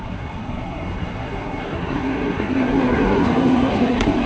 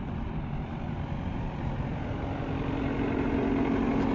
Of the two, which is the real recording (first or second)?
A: second